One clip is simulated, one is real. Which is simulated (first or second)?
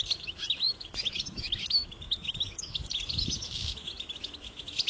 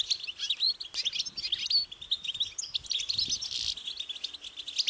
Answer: first